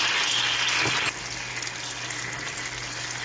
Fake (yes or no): no